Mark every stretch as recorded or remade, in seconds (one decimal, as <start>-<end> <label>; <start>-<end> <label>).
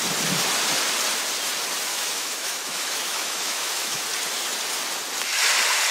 0.0-1.9 recorded; 1.9-4.0 remade; 4.0-5.9 recorded